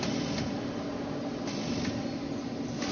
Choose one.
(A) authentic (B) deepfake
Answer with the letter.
A